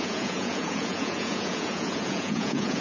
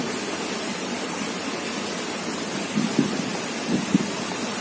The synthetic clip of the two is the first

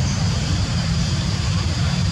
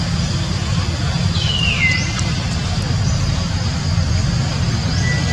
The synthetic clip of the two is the first